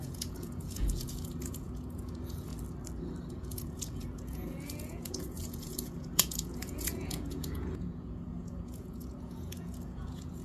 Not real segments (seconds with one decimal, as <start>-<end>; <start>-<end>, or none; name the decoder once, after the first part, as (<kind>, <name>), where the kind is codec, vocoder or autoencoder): 0.0-2.5 (vocoder, Vocos); 3.3-10.4